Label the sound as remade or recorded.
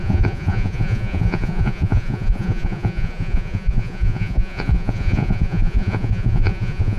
remade